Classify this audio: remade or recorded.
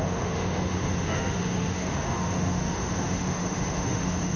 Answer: remade